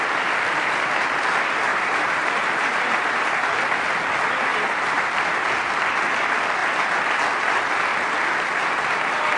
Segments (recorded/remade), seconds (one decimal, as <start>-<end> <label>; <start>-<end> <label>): 0.0-1.7 recorded; 1.7-3.5 remade; 3.5-4.5 recorded; 4.5-5.5 remade; 5.5-9.4 recorded